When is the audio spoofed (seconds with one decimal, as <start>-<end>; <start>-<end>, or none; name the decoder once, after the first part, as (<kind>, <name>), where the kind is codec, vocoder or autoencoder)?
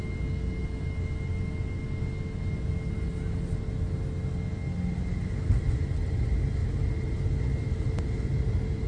none